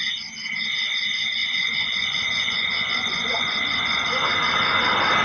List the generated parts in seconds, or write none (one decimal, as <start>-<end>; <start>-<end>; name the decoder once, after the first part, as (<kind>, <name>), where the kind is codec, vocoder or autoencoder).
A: 1.4-4.3 (vocoder, Vocos)